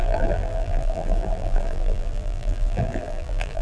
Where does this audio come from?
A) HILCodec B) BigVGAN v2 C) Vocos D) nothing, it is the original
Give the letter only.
B